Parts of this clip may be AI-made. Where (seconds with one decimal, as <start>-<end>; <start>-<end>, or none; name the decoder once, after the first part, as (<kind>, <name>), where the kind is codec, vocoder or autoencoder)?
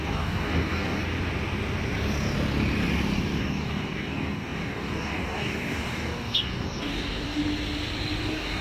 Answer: 0.0-1.0 (codec, DAC); 3.4-7.4; 8.2-8.6